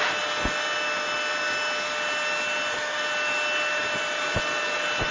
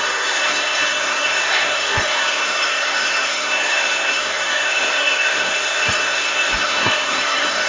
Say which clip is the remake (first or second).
second